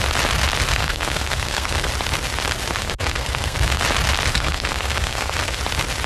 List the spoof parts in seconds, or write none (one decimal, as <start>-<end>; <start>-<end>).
0.7-1.9; 2.8-3.8; 4.3-5.6